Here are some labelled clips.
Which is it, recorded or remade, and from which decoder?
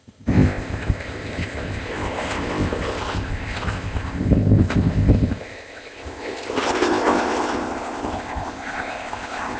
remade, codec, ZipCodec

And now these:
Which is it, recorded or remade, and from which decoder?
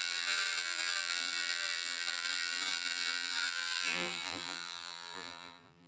remade, vocoder, BigVGAN v2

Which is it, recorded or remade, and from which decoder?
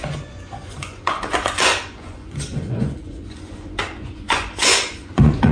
remade, vocoder, Vocos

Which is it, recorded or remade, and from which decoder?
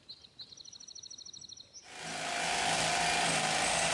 recorded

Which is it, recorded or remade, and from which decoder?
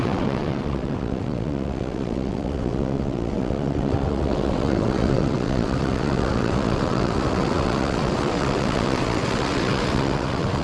remade, vocoder, WaveNeXt